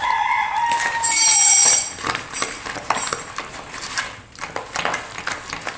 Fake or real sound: real